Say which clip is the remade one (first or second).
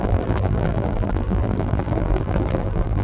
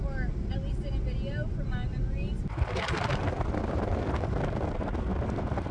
first